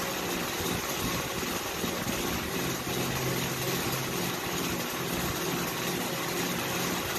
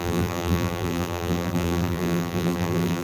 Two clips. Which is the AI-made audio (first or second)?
second